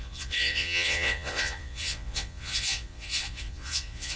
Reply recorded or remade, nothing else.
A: remade